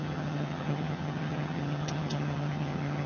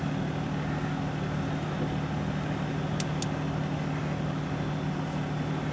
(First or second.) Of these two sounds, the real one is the second